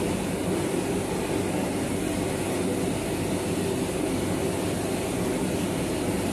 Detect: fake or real real